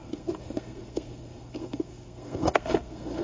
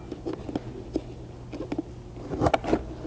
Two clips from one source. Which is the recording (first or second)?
second